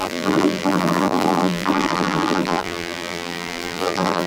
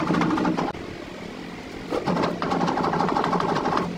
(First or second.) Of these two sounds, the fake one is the first